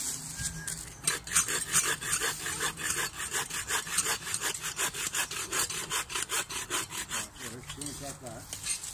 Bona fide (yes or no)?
yes